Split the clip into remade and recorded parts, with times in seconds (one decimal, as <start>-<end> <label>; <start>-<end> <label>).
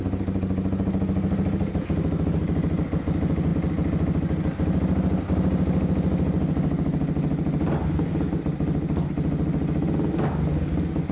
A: 0.0-11.1 recorded